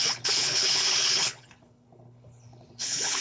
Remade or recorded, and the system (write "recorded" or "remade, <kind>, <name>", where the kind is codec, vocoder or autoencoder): remade, codec, HILCodec